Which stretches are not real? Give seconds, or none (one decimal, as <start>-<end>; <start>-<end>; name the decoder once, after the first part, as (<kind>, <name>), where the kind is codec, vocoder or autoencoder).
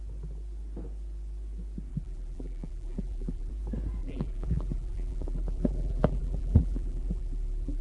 1.9-3.5 (vocoder, BigVGAN v2); 4.0-7.8